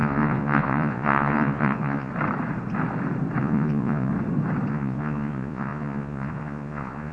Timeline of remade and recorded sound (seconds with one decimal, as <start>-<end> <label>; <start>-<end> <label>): 0.0-2.1 remade; 2.1-3.4 recorded; 3.4-4.1 remade; 4.1-4.7 recorded; 4.7-7.1 remade